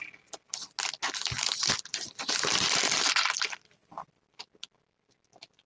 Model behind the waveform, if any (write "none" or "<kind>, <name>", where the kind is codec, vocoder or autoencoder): none